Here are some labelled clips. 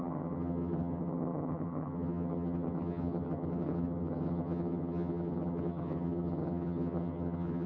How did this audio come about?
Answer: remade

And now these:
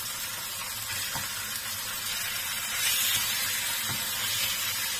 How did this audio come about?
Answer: recorded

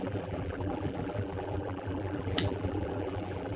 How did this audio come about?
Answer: remade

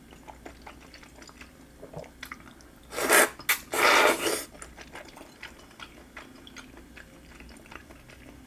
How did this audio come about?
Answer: recorded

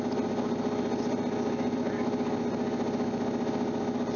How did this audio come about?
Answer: recorded